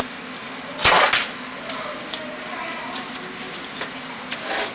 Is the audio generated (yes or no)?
no